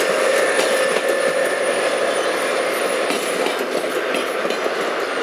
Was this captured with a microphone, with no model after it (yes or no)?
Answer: yes